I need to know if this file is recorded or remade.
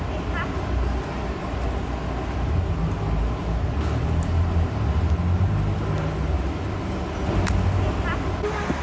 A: recorded